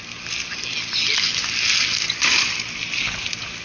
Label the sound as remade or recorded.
recorded